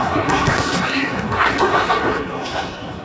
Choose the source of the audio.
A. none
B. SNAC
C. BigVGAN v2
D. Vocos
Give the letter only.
B